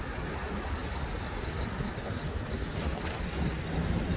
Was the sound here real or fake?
real